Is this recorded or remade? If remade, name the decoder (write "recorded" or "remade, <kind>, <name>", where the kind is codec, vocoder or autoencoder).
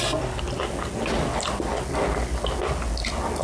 recorded